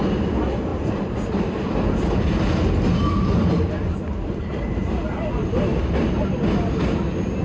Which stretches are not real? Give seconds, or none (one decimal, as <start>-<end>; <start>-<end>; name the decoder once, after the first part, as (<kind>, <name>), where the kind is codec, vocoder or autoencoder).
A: none